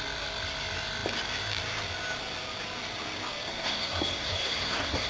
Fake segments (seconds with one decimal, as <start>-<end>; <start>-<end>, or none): 3.5-5.1